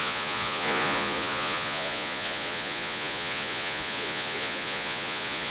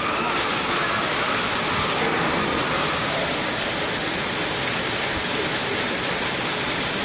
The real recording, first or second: second